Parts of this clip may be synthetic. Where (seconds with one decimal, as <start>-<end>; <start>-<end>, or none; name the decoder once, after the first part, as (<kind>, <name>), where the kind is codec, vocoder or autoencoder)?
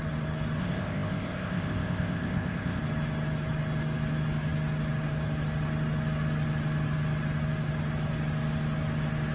0.6-2.8 (codec, ZipCodec)